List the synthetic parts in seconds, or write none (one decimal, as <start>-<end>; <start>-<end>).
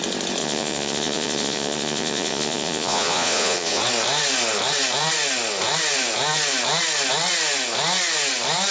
0.4-3.8